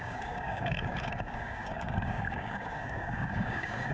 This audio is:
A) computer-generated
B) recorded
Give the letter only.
A